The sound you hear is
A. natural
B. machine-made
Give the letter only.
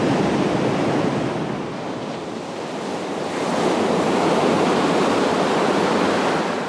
A